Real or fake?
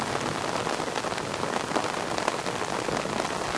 real